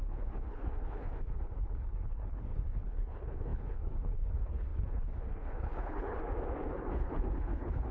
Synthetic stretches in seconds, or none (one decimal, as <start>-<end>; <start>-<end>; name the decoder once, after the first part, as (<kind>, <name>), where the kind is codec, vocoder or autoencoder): 0.0-6.2 (codec, HILCodec); 6.7-7.9

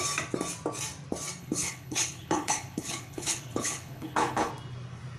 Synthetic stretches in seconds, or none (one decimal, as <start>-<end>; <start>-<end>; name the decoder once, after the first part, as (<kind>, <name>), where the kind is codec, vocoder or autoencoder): 1.4-4.5 (codec, HILCodec)

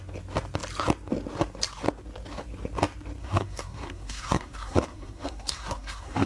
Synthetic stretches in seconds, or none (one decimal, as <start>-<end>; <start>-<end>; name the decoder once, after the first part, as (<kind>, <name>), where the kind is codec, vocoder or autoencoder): 3.2-6.3 (codec, SNAC)

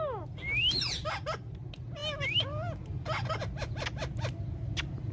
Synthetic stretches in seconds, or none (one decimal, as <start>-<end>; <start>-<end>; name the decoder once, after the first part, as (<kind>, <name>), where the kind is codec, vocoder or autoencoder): none

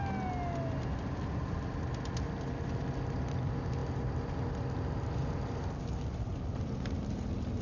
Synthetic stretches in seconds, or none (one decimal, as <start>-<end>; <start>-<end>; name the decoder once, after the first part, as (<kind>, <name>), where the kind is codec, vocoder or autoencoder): none

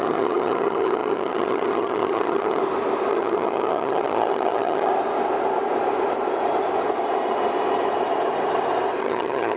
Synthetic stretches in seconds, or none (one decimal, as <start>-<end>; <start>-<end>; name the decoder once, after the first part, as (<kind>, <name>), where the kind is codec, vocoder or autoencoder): 0.0-2.6 (vocoder, HiFi-GAN); 3.1-4.9; 9.0-9.6

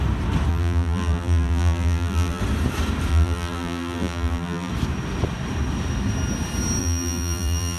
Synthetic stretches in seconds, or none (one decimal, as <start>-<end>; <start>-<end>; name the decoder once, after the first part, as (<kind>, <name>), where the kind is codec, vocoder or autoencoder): 0.5-2.4 (vocoder, BigVGAN v2); 3.1-4.7; 6.8-7.8